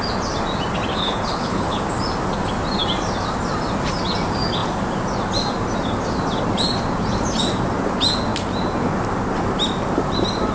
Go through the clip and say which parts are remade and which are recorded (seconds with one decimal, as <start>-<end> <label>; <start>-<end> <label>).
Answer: 0.0-0.9 recorded; 0.9-1.8 remade; 1.8-10.5 recorded